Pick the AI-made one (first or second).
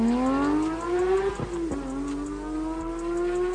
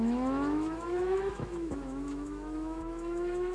second